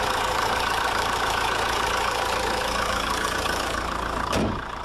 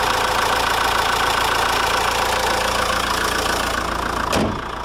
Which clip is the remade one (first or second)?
first